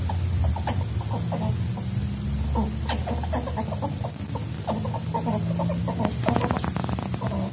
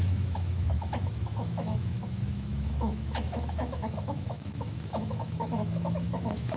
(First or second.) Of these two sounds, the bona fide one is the first